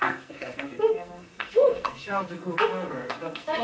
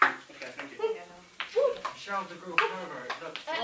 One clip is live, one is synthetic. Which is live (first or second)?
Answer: second